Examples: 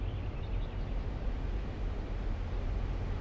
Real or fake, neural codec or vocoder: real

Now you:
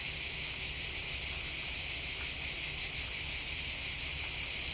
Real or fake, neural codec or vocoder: real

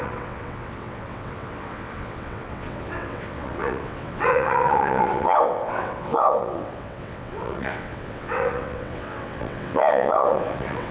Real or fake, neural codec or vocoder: fake, vocoder, WaveNeXt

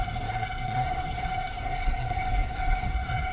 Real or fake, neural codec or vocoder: fake, codec, SNAC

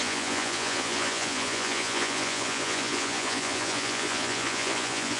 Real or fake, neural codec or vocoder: fake, vocoder, Vocos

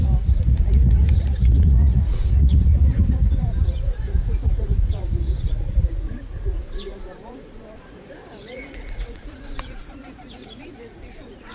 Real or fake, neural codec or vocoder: fake, vocoder, Vocos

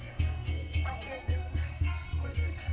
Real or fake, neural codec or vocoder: fake, codec, SNAC